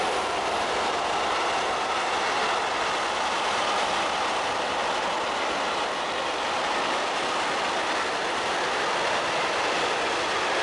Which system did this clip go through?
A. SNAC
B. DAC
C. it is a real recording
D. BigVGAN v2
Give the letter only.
C